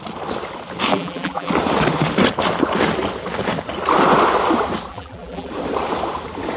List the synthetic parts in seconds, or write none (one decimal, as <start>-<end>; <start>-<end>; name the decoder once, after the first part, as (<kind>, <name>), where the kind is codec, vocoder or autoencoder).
0.9-1.5 (vocoder, BigVGAN v2); 4.9-5.5